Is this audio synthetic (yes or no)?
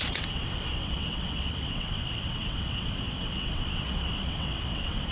yes